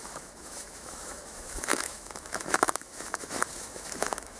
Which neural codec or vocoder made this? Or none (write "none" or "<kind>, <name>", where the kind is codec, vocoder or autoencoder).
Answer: autoencoder, DAC-VAE